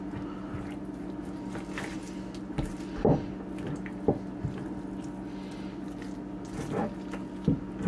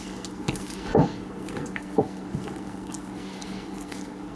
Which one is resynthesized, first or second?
second